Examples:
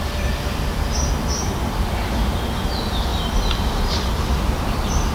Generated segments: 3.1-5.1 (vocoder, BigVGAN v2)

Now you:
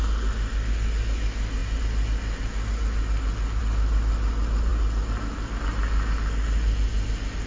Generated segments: none

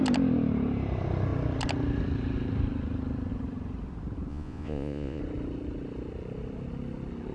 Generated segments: 4.3-5.2 (vocoder, Vocos)

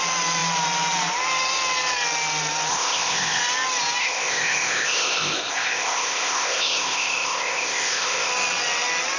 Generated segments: 2.7-3.4 (codec, ZipCodec); 4.0-8.3

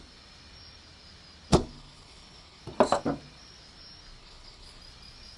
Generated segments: 1.5-2.6 (codec, HILCodec); 4.2-4.8

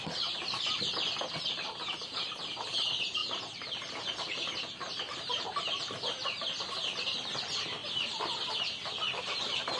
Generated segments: none

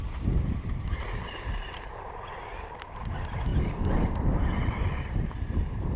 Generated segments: 0.0-3.5 (vocoder, BigVGAN v2); 4.0-6.0